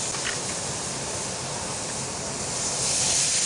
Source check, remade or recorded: recorded